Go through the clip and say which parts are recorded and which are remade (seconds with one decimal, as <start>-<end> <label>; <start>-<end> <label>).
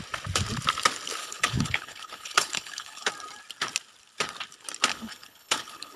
0.0-1.2 recorded; 1.2-3.1 remade; 3.1-4.9 recorded; 4.9-6.0 remade